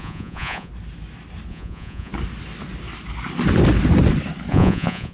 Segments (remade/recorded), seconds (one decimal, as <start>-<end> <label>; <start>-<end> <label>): 0.0-0.7 remade; 0.7-1.5 recorded; 1.5-2.1 remade; 2.1-4.5 recorded; 4.5-5.1 remade